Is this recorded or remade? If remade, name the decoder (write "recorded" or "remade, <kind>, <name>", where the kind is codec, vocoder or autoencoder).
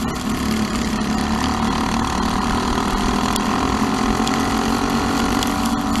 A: recorded